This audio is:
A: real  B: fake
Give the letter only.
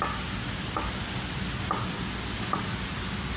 A